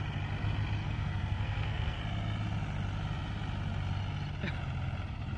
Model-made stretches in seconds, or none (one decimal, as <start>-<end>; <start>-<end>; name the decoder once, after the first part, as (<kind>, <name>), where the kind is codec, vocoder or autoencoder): 0.8-2.0 (codec, SNAC)